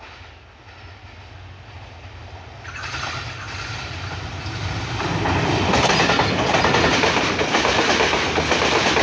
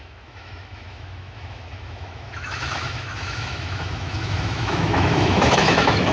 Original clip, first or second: first